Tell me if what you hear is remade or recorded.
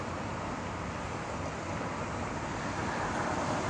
recorded